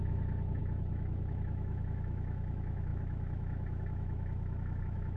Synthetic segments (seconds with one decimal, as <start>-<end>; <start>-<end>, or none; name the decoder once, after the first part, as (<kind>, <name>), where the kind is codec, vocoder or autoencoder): 0.0-5.2 (autoencoder, DAC-VAE)